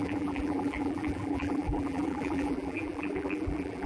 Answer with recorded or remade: remade